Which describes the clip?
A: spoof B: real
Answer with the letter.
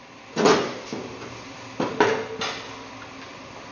B